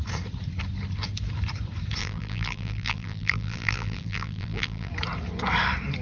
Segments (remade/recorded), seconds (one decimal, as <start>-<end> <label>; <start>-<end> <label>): 0.0-2.0 recorded; 2.0-4.9 remade; 4.9-6.0 recorded

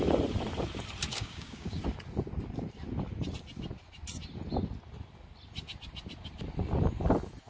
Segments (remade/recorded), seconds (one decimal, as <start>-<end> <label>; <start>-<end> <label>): 0.0-1.1 recorded; 1.1-1.8 remade; 1.8-7.5 recorded

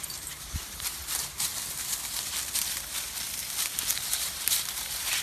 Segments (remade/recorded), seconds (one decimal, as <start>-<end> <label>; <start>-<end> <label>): 0.0-1.0 remade; 1.0-4.1 recorded; 4.1-5.2 remade

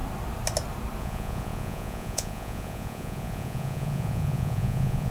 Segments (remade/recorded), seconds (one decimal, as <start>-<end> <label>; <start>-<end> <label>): 0.0-1.0 recorded; 1.0-5.1 remade

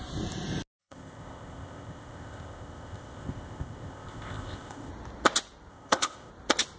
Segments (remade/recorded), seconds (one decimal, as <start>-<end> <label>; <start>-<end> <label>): 0.0-0.8 recorded; 0.8-4.9 remade; 4.9-5.7 recorded; 5.7-6.3 remade; 6.3-6.8 recorded

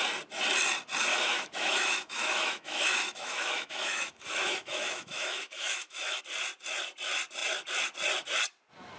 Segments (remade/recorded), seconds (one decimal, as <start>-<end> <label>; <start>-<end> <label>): 0.0-1.1 recorded; 1.1-6.2 remade; 6.2-9.0 recorded

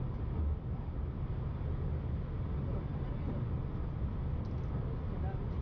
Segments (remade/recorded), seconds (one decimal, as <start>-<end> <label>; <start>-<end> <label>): 0.0-5.6 recorded

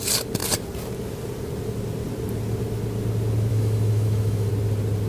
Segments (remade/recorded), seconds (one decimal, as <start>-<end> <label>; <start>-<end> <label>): 0.0-3.5 recorded; 3.5-4.5 remade; 4.5-5.1 recorded